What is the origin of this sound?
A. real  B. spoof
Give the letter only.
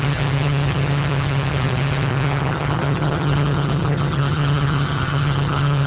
B